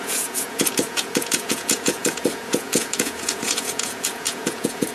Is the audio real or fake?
fake